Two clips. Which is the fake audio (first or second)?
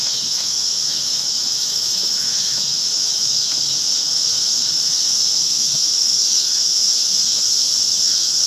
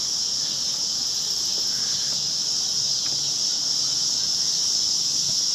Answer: first